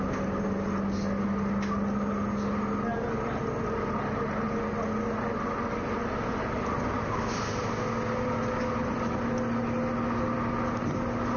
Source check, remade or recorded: recorded